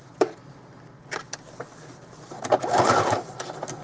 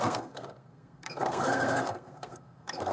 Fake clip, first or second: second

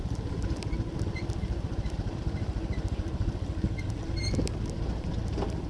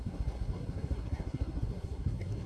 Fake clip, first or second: second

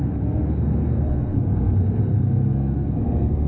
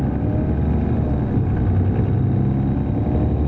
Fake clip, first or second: first